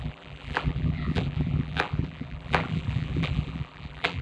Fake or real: fake